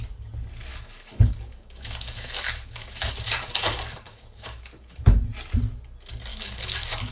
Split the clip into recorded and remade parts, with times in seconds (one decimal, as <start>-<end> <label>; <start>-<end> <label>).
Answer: 0.0-0.7 recorded; 0.7-5.0 remade; 5.0-6.3 recorded; 6.3-7.1 remade